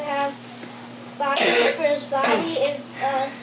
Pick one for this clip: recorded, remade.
recorded